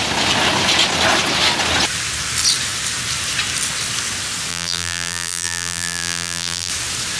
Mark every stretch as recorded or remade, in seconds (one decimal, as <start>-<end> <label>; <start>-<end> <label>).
0.0-4.5 recorded; 4.5-6.7 remade; 6.7-7.2 recorded